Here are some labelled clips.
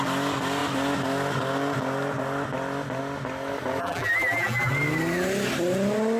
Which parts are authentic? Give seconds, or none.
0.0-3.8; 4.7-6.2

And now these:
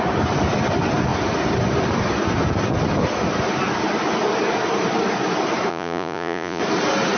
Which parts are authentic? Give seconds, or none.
0.0-5.7; 6.6-7.2

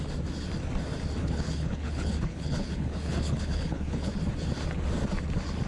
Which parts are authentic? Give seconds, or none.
0.0-1.2; 4.1-5.7

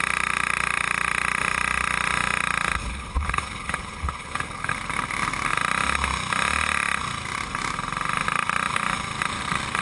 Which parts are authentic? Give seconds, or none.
0.0-2.8; 4.7-9.8

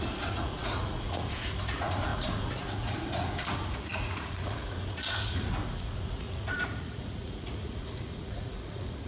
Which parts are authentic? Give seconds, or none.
none

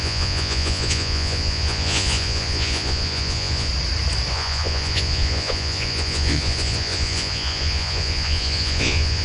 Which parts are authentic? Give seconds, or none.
3.7-4.3

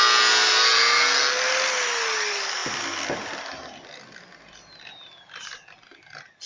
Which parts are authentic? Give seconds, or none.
0.0-6.5